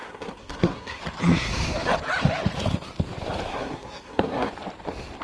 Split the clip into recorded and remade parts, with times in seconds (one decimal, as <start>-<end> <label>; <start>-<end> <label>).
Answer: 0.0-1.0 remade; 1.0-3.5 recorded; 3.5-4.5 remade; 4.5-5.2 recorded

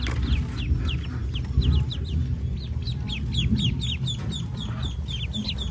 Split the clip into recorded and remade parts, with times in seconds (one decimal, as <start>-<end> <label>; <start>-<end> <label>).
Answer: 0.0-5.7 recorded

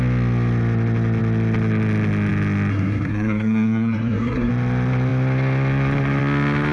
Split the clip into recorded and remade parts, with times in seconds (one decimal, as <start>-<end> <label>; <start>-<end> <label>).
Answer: 0.0-2.7 recorded; 2.7-4.5 remade; 4.5-6.7 recorded

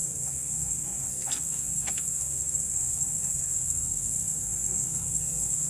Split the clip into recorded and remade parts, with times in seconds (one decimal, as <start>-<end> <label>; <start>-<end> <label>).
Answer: 0.0-5.7 remade

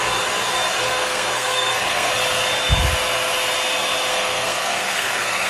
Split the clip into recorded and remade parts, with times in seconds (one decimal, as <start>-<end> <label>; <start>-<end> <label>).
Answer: 0.0-0.8 recorded; 0.8-2.1 remade; 2.1-4.1 recorded; 4.1-5.5 remade